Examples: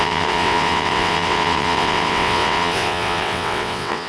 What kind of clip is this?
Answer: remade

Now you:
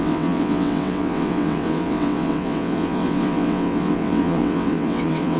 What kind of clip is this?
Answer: remade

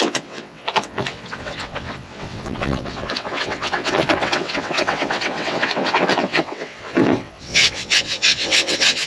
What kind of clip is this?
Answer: remade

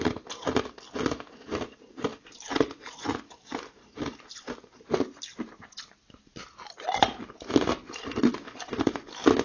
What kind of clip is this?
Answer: recorded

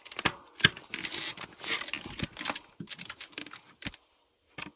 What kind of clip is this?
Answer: recorded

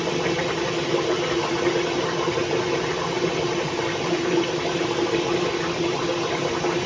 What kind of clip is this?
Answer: recorded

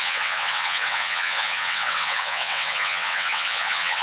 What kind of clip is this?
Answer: remade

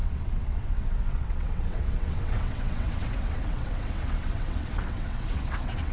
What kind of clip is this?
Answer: remade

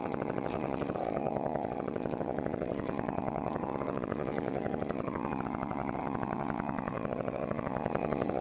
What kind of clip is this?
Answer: remade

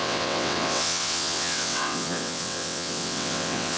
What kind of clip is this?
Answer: remade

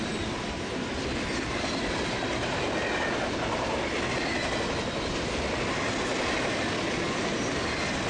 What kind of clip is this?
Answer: recorded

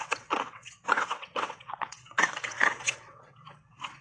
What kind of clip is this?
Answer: remade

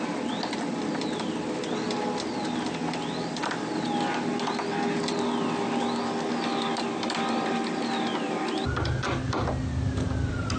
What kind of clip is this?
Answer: recorded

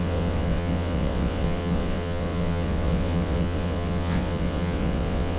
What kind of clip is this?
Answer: remade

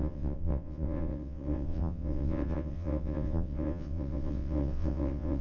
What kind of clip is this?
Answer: remade